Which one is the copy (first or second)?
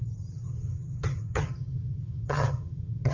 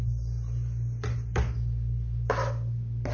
first